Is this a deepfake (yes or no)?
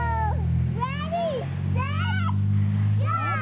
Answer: no